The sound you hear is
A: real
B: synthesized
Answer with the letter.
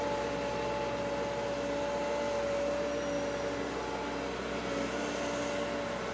A